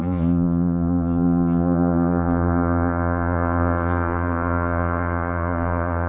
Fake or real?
fake